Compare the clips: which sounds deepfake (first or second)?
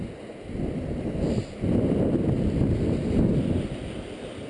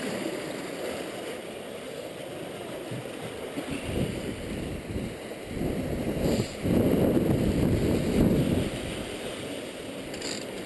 second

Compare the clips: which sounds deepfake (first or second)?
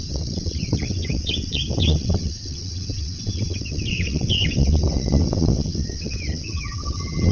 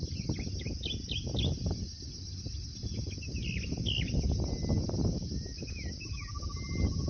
first